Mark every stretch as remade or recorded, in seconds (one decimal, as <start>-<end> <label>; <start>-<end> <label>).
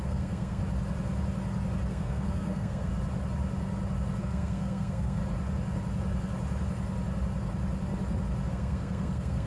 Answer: 0.0-0.6 remade; 0.6-1.9 recorded; 1.9-2.9 remade; 2.9-4.2 recorded; 4.2-5.2 remade; 5.2-8.5 recorded; 8.5-9.5 remade